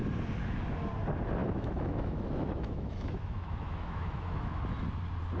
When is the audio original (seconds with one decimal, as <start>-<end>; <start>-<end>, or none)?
0.0-1.4; 4.6-5.4